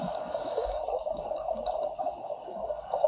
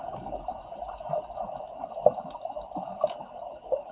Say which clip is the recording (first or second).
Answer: second